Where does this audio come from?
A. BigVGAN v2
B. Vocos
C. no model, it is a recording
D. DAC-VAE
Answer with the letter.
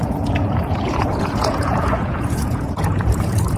B